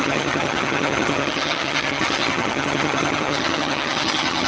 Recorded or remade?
remade